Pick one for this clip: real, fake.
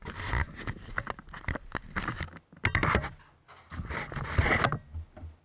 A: real